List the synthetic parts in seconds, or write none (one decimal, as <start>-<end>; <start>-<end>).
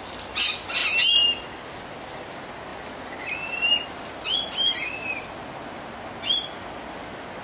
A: none